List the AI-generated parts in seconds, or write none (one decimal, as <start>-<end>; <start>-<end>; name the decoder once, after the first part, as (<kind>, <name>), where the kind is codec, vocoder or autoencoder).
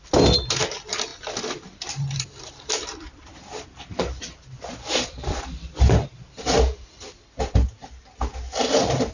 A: 1.1-5.7 (vocoder, BigVGAN v2)